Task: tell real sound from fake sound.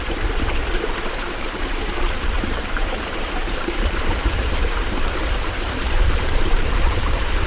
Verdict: fake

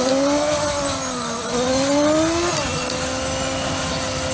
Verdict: real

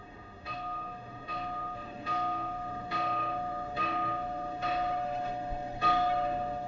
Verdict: fake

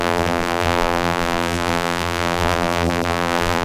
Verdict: fake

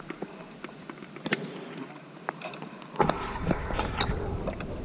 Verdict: real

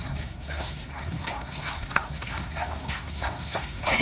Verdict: fake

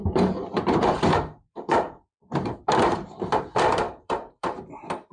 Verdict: fake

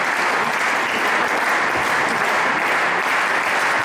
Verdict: real